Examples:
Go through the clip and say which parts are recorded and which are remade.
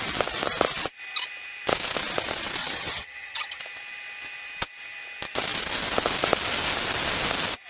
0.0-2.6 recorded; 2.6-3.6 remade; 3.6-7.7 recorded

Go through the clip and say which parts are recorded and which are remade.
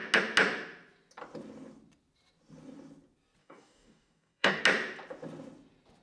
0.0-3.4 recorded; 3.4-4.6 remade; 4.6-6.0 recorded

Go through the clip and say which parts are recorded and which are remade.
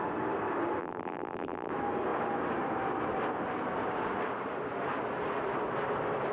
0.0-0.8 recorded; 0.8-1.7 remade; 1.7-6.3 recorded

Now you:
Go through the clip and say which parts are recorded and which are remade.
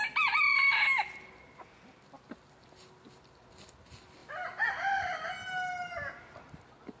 0.0-7.0 recorded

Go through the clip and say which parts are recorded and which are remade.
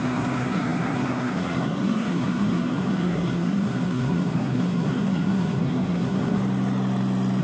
0.0-6.4 remade; 6.4-7.4 recorded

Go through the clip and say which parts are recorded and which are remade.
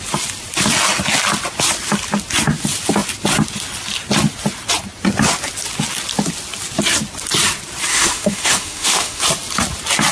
0.0-7.9 recorded; 7.9-9.2 remade; 9.2-10.1 recorded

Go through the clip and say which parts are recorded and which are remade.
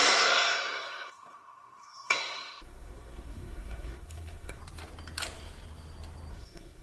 0.0-4.6 remade; 4.6-6.3 recorded; 6.3-6.8 remade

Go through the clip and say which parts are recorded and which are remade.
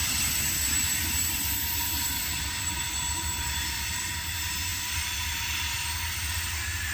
0.0-4.1 remade; 4.1-4.7 recorded; 4.7-6.0 remade; 6.0-6.9 recorded